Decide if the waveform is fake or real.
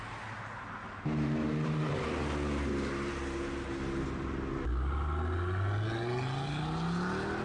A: real